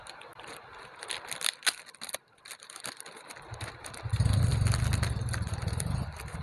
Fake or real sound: real